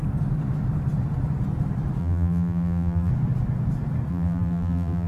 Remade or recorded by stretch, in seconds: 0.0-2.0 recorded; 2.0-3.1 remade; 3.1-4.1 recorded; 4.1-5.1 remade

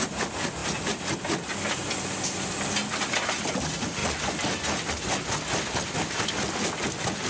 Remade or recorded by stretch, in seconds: 0.0-7.3 recorded

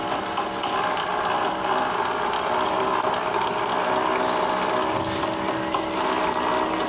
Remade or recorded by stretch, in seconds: 0.0-6.9 recorded

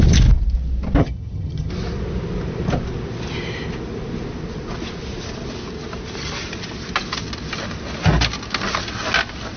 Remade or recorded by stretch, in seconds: 0.0-1.0 recorded; 1.0-1.7 remade; 1.7-9.6 recorded

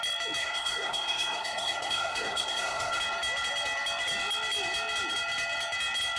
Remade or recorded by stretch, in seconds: 0.0-0.4 recorded; 0.4-3.0 remade; 3.0-6.2 recorded

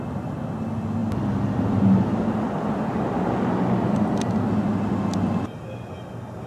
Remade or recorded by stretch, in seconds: 0.0-6.5 recorded

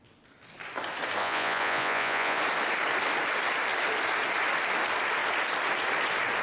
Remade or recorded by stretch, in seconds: 0.0-1.2 recorded; 1.2-2.4 remade; 2.4-6.4 recorded